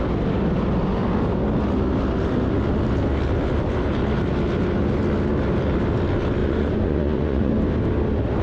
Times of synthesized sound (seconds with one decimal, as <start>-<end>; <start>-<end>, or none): 6.4-7.5